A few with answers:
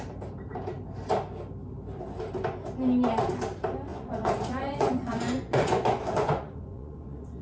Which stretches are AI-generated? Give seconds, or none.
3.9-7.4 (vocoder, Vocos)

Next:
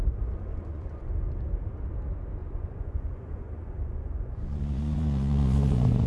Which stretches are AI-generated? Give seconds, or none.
0.5-1.1 (vocoder, Vocos); 2.4-6.1

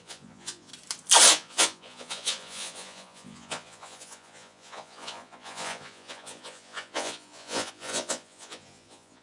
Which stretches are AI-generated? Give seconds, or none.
0.0-0.7 (vocoder, Vocos); 1.3-9.2

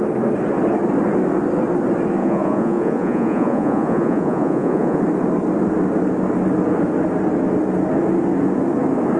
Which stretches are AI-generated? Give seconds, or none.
2.2-5.0 (vocoder, Vocos)

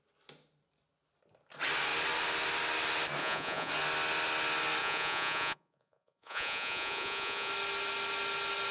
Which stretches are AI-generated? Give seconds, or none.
3.2-3.7 (vocoder, Vocos); 4.8-7.5

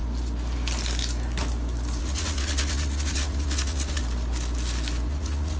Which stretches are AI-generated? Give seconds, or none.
2.0-4.0 (vocoder, Vocos); 5.1-5.6

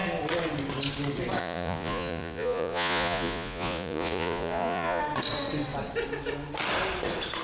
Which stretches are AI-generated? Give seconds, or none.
1.4-5.0 (vocoder, Vocos)

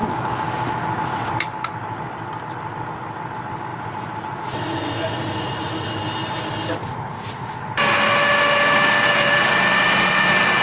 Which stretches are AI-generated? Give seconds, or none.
3.7-6.0 (vocoder, Vocos); 6.8-7.5